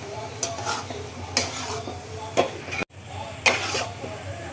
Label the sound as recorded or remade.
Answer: recorded